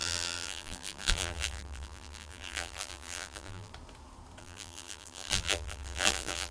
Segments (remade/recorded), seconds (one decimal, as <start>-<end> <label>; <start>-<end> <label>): 0.0-3.7 remade; 3.7-4.4 recorded; 4.4-6.5 remade